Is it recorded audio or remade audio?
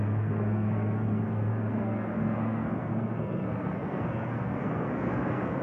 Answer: remade